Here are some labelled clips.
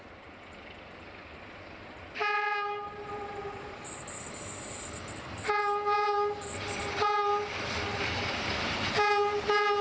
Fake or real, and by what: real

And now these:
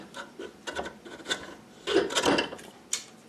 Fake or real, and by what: real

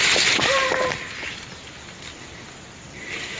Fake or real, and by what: real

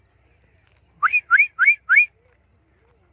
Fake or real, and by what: real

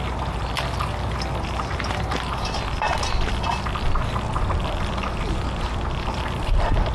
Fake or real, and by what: real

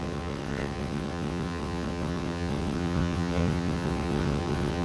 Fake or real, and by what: fake, vocoder, WaveNeXt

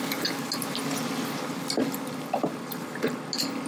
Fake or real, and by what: real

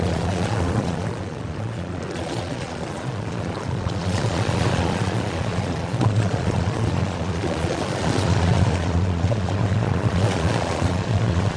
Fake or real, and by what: fake, vocoder, Vocos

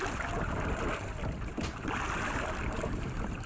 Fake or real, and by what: real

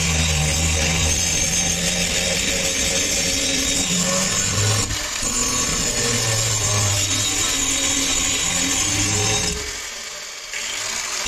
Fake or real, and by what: real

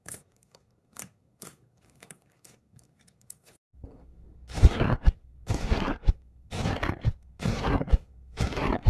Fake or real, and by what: fake, codec, SNAC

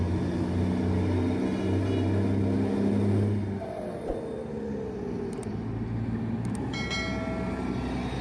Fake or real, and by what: real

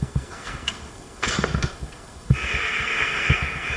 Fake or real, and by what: fake, codec, SNAC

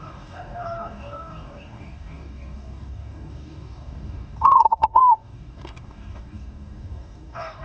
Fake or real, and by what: fake, codec, DAC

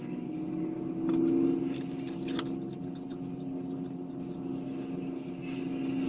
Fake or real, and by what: real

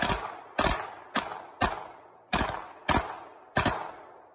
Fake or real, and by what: real